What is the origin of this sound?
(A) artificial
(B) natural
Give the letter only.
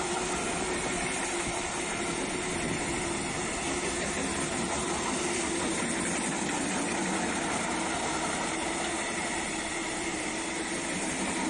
B